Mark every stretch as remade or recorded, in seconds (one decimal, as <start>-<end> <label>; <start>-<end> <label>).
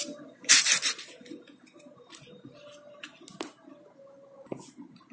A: 0.0-0.5 remade; 0.5-5.1 recorded